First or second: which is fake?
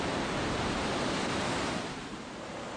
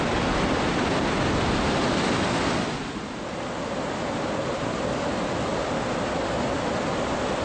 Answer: first